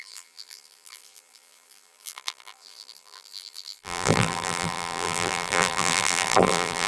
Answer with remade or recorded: remade